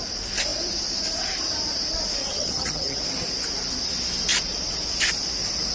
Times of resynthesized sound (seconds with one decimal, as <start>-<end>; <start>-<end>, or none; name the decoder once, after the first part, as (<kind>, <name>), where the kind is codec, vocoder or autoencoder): 2.2-3.0 (vocoder, HiFi-GAN)